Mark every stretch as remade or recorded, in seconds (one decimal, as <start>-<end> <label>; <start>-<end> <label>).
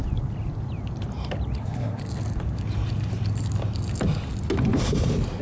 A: 0.0-1.6 recorded; 1.6-2.0 remade; 2.0-5.4 recorded